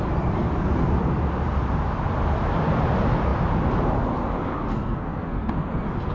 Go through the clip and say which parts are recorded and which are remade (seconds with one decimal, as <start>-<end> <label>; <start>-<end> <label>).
0.0-4.6 recorded; 4.6-5.5 remade; 5.5-6.1 recorded

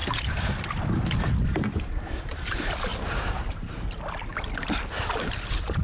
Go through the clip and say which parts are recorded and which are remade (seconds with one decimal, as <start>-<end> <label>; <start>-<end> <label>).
0.0-0.5 remade; 0.5-2.9 recorded; 2.9-3.7 remade; 3.7-5.8 recorded